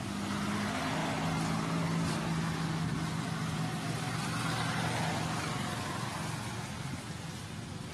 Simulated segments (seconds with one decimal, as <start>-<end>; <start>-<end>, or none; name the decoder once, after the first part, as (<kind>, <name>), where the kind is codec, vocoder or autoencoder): none